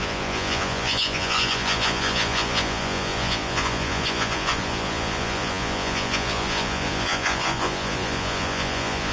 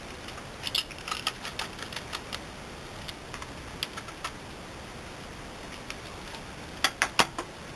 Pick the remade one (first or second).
first